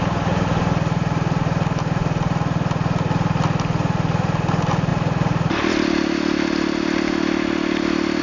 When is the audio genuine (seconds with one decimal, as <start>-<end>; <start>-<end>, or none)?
0.0-8.2